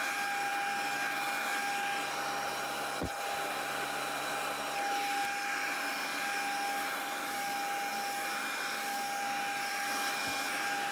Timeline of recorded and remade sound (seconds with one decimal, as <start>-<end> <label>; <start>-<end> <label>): 0.0-10.9 recorded